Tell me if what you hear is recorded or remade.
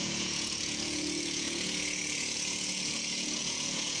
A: remade